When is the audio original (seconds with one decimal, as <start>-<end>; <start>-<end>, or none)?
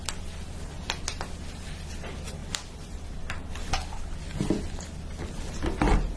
0.0-6.2